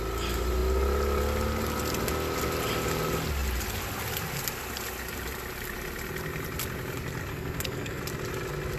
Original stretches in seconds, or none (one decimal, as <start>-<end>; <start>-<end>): 0.0-7.3; 8.0-8.8